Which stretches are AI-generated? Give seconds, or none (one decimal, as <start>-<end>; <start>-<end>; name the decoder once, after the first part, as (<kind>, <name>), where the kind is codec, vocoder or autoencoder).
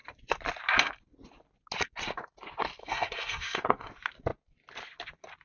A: 2.8-3.9 (codec, SNAC)